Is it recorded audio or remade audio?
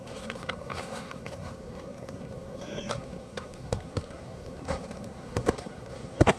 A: remade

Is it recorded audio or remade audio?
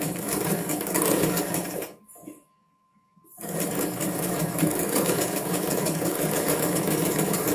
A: remade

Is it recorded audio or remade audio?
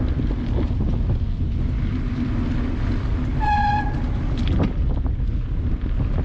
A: recorded